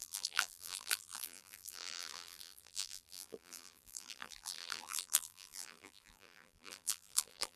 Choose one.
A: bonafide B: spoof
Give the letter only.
B